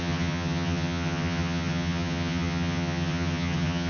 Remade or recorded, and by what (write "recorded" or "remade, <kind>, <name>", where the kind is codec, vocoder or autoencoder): remade, vocoder, HiFi-GAN